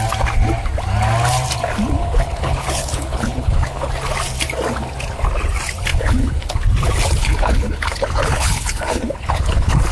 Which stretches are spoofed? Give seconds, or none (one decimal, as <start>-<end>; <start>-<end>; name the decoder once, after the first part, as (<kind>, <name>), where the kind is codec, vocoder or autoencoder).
2.0-3.9 (codec, HILCodec); 5.9-6.6; 7.2-9.9

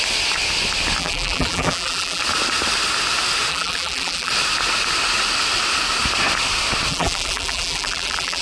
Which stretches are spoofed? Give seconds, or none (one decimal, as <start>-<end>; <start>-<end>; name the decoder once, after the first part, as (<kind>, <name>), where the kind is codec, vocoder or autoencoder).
1.0-2.2 (vocoder, BigVGAN v2); 3.5-4.3; 6.9-8.4

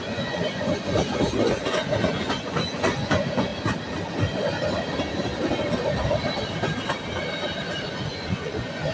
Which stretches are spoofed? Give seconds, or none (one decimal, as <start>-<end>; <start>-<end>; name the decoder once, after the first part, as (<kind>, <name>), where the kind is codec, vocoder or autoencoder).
0.0-3.5 (vocoder, Vocos); 7.9-8.9

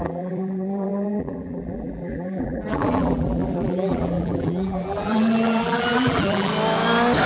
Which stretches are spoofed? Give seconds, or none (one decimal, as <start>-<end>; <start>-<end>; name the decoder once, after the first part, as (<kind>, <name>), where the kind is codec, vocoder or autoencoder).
0.0-6.5 (vocoder, BigVGAN v2)